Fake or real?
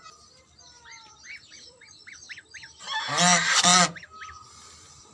real